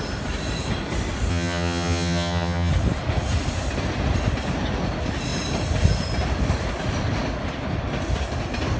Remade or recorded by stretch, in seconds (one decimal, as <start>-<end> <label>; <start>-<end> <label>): 0.0-1.3 recorded; 1.3-2.7 remade; 2.7-8.8 recorded